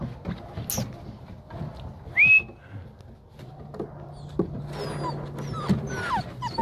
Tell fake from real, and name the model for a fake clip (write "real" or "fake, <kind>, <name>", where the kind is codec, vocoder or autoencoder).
real